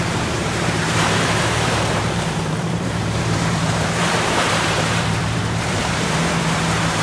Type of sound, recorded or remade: remade